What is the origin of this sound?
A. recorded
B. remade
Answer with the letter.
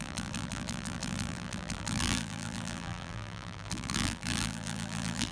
B